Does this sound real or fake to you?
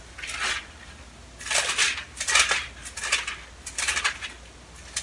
real